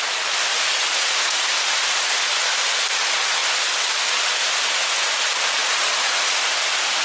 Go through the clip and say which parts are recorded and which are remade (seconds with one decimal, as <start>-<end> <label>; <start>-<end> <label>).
0.0-0.5 recorded; 0.5-2.1 remade; 2.1-5.6 recorded; 5.6-6.3 remade; 6.3-7.0 recorded